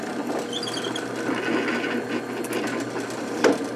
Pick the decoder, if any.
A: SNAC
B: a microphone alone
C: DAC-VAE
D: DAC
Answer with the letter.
B